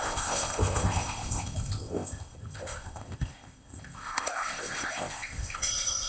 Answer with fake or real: fake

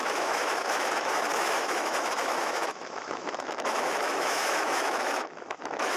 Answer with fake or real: fake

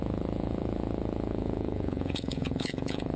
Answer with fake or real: fake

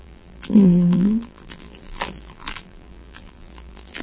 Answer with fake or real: fake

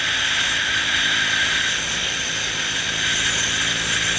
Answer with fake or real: real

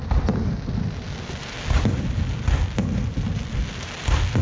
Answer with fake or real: real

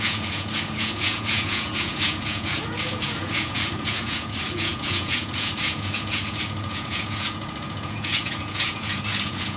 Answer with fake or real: fake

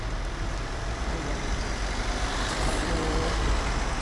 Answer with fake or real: real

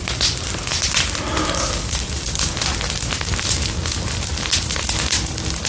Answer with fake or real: real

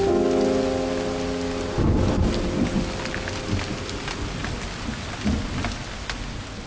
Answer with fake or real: real